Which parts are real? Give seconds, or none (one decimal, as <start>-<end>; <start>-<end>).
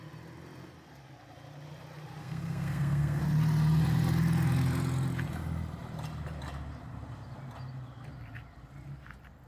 0.0-2.2; 3.2-9.5